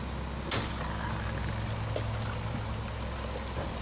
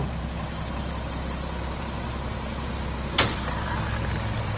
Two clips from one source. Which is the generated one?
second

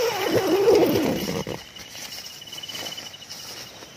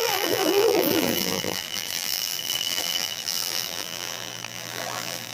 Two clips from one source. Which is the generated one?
second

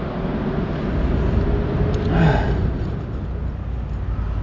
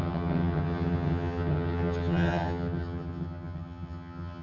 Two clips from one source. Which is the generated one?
second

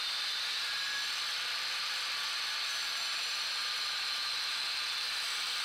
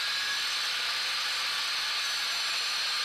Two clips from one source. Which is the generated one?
first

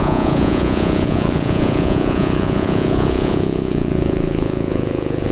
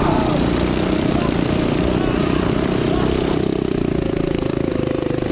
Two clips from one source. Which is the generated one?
first